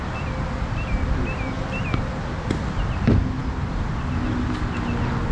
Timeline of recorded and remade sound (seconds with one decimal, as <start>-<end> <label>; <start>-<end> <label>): 0.0-5.3 recorded